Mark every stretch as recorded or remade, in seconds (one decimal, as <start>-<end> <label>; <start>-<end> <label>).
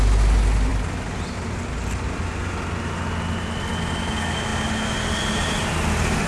0.0-6.3 recorded